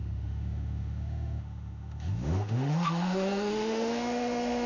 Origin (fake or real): fake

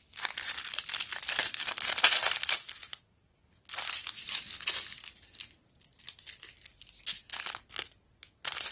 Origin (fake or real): real